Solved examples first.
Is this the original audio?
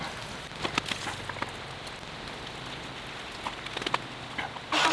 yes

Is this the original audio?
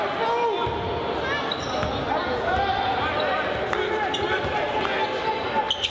yes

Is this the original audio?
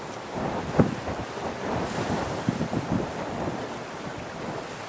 yes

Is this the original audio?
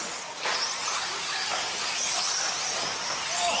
yes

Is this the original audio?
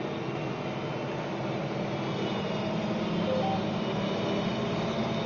yes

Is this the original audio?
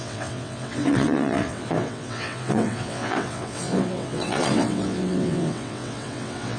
no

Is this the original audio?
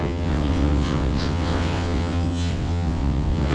no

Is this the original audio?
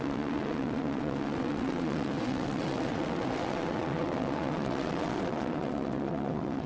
no